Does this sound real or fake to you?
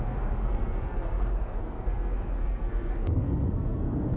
fake